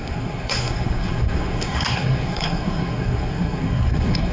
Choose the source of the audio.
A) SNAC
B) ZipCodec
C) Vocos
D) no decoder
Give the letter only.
A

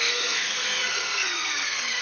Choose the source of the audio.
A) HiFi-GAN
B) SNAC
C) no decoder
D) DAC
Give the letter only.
B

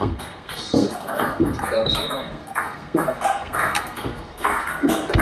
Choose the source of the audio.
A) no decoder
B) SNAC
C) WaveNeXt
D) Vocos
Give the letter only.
B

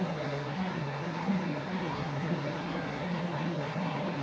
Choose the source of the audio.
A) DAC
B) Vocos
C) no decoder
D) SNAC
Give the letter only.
D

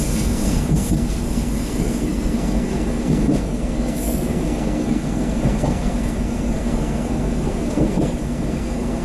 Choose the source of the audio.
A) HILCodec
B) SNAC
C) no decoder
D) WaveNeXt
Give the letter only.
B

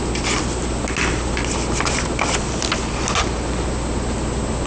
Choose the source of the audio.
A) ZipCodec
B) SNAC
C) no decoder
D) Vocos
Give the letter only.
C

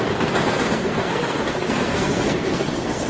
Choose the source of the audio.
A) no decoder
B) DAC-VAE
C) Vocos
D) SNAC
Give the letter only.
D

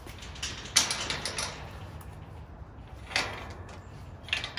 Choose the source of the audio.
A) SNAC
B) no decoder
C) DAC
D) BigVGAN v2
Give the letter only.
B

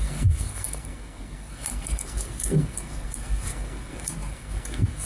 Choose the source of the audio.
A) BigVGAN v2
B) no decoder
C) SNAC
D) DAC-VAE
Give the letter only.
C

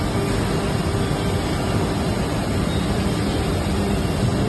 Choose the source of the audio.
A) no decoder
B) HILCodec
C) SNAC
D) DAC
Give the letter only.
A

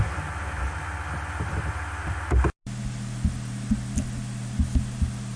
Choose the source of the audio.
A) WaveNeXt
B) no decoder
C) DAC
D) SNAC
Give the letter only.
B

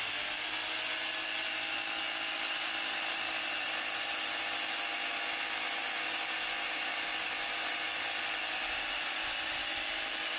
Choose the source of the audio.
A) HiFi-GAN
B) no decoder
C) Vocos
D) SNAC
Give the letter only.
B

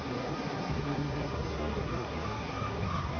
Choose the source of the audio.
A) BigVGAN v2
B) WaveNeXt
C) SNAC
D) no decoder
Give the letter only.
C